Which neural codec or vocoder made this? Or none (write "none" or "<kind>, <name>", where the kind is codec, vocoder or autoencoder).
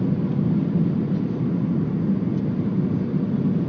none